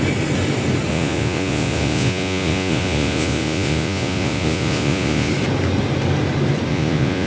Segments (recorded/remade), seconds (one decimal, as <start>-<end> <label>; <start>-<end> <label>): 0.0-0.9 recorded; 0.9-5.3 remade; 5.3-6.7 recorded; 6.7-7.3 remade